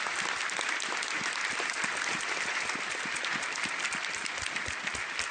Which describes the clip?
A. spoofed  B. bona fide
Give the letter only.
B